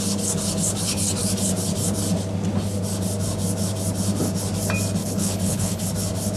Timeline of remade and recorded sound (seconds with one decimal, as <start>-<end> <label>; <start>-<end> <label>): 0.0-5.0 recorded; 5.0-5.8 remade; 5.8-6.4 recorded